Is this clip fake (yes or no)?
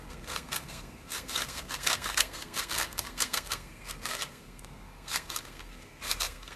yes